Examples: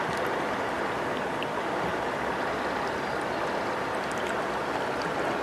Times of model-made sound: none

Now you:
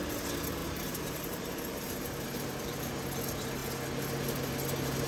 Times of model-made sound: 0.6-2.9 (vocoder, BigVGAN v2)

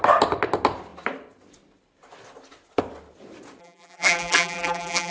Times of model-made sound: 3.6-5.1 (vocoder, BigVGAN v2)

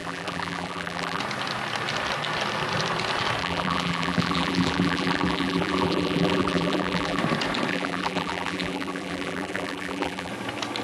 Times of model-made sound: 0.0-1.2 (vocoder, BigVGAN v2); 3.4-7.2; 7.7-10.3

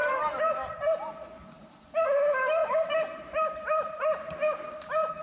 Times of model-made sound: 0.0-1.1 (vocoder, BigVGAN v2); 2.6-4.7

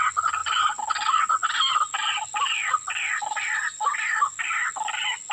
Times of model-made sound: none